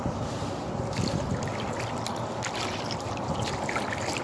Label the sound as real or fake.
real